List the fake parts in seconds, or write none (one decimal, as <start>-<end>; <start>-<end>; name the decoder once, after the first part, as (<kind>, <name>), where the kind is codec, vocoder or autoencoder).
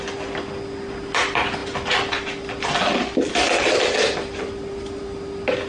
none